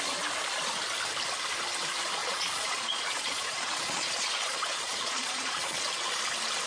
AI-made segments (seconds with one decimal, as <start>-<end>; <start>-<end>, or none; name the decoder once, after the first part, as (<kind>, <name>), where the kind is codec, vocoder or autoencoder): 2.2-6.2 (vocoder, Vocos)